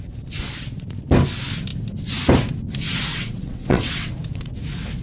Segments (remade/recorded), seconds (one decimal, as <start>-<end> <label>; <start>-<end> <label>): 0.0-3.1 recorded; 3.1-4.1 remade; 4.1-5.0 recorded